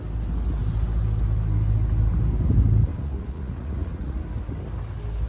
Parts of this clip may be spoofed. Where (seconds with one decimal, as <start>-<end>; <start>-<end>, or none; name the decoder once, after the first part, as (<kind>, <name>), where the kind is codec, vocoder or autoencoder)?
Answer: 2.9-4.2 (vocoder, Vocos)